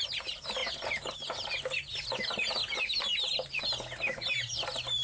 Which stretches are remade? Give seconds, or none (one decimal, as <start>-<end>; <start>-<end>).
none